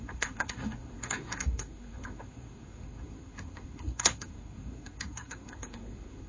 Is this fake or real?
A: fake